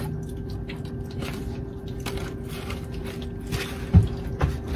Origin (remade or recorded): recorded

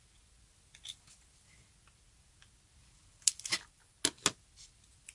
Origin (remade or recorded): recorded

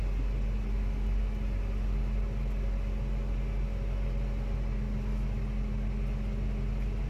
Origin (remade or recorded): recorded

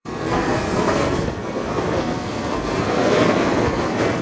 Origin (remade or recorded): remade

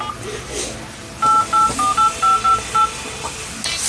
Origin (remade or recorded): recorded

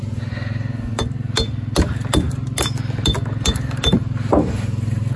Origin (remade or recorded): recorded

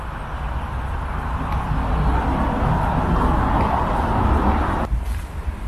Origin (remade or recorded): recorded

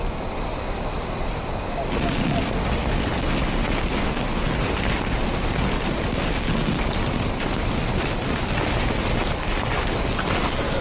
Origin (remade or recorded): recorded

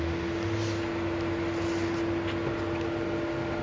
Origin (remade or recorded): recorded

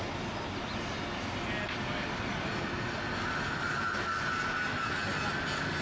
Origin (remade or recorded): recorded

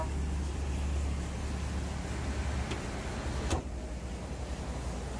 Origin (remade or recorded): recorded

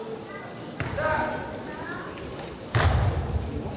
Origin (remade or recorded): recorded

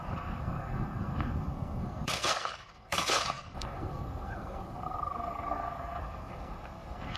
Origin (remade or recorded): remade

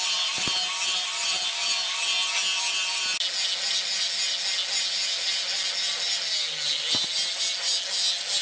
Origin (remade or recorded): recorded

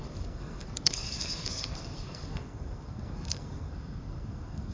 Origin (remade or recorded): remade